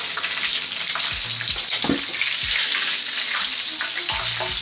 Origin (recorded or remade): recorded